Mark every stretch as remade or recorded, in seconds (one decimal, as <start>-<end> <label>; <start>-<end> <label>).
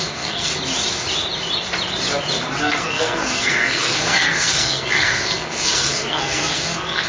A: 0.0-0.5 remade; 0.5-2.6 recorded; 2.6-7.1 remade